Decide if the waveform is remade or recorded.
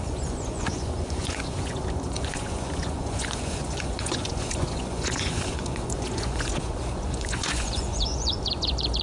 remade